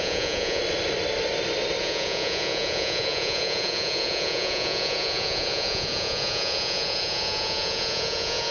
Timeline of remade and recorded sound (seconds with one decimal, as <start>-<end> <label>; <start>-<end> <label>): 0.0-0.6 remade; 0.6-1.8 recorded; 1.8-8.5 remade